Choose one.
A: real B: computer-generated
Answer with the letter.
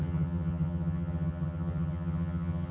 B